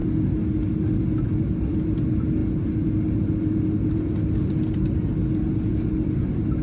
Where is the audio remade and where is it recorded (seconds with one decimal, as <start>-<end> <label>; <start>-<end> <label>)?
0.0-6.6 recorded